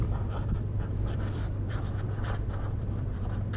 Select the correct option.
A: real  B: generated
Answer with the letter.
B